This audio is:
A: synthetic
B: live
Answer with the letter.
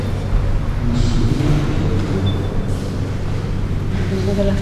B